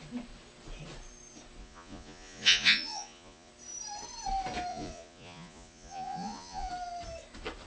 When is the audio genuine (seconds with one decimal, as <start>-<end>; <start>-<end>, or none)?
0.0-1.6; 3.5-4.7; 6.7-7.7